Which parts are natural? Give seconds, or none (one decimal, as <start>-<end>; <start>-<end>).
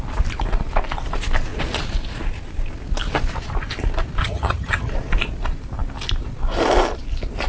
0.0-4.2; 4.9-7.5